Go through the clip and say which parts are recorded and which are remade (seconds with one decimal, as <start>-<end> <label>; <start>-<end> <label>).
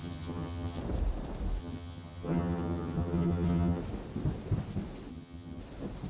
0.0-0.8 remade; 0.8-1.6 recorded; 1.6-3.8 remade; 3.8-5.1 recorded; 5.1-5.6 remade; 5.6-6.1 recorded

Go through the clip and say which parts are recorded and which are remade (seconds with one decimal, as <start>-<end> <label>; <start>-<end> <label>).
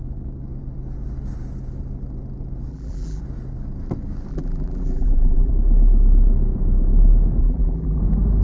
0.0-2.7 recorded; 2.7-3.2 remade; 3.2-4.3 recorded; 4.3-5.5 remade; 5.5-7.4 recorded; 7.4-8.0 remade; 8.0-8.4 recorded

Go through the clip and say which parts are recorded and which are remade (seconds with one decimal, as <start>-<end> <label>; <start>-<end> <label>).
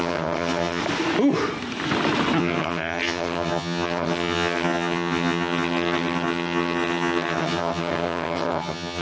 0.0-0.8 remade; 0.8-2.4 recorded; 2.4-9.0 remade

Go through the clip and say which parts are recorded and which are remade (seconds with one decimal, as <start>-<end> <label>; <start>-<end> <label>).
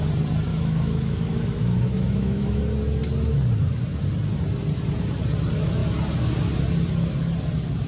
0.0-0.5 recorded; 0.5-2.6 remade; 2.6-7.9 recorded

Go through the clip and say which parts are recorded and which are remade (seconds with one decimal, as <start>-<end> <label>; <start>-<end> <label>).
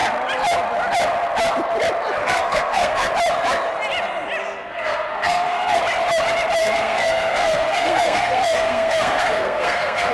0.0-2.2 recorded; 2.2-3.1 remade; 3.1-4.4 recorded; 4.4-5.8 remade; 5.8-6.6 recorded; 6.6-10.1 remade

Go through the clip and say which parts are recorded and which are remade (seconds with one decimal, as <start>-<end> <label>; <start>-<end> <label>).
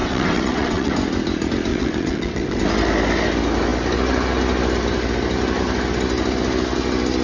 0.0-0.9 remade; 0.9-1.7 recorded; 1.7-2.6 remade; 2.6-7.2 recorded